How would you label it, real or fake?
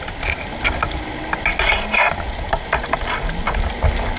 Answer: real